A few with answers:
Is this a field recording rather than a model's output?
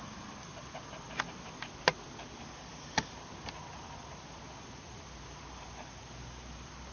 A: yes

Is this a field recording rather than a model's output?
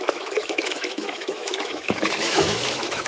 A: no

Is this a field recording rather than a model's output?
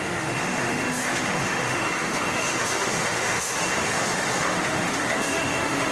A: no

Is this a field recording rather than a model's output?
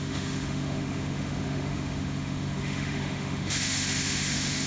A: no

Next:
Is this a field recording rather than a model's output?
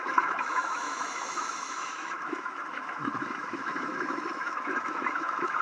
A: no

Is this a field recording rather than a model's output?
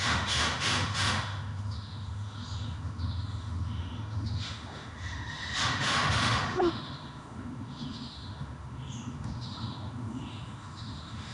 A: no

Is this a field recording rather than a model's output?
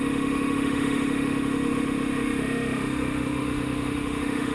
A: no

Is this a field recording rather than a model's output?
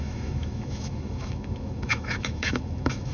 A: no